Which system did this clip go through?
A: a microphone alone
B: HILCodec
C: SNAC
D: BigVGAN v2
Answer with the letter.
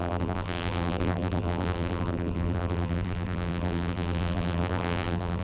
D